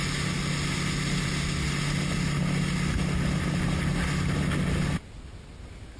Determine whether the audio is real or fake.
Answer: real